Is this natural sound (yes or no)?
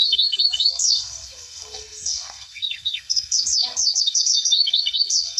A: no